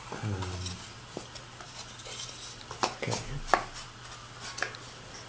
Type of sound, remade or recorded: recorded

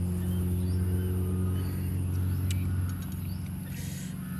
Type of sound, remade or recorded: recorded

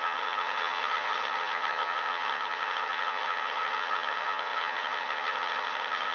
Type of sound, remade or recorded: remade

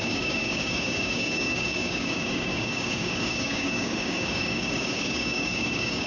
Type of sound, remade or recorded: remade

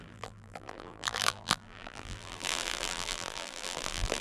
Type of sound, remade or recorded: remade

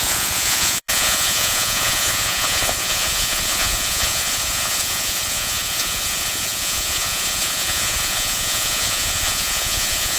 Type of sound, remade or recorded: remade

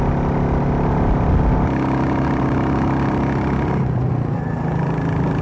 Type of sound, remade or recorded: recorded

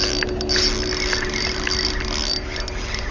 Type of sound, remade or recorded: recorded